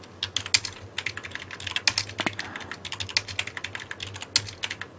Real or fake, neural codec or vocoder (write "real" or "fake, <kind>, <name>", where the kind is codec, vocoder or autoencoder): real